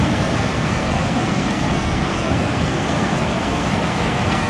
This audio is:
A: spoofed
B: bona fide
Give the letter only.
A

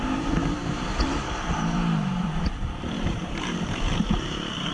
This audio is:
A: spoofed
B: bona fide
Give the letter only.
A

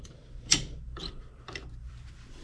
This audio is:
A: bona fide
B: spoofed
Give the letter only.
B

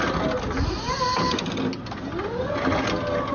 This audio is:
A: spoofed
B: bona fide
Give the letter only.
B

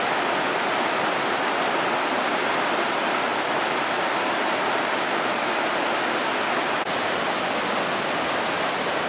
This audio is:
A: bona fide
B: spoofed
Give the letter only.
A